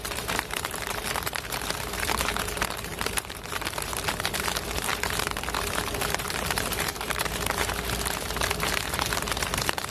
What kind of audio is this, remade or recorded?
remade